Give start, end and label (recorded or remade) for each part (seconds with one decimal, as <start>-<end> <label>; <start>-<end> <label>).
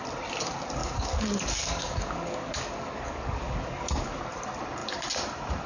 0.0-0.8 recorded; 0.8-4.2 remade; 4.2-5.7 recorded